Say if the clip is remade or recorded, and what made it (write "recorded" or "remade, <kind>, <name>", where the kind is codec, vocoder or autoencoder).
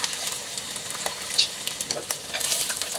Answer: recorded